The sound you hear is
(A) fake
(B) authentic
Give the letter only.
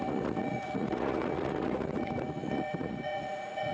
A